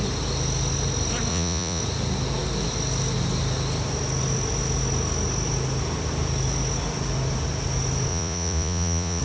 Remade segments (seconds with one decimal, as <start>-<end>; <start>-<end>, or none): 1.3-1.8; 8.1-9.2